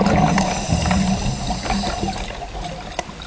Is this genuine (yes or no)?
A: yes